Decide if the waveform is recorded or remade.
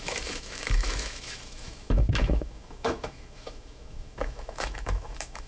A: remade